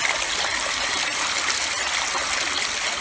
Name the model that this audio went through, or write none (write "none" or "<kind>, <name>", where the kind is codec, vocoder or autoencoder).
none